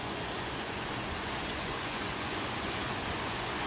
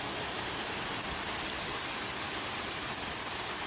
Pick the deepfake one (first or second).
first